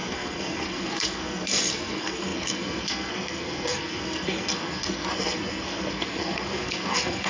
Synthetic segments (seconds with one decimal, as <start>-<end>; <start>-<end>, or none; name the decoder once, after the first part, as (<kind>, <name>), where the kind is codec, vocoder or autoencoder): 0.0-7.3 (codec, SNAC)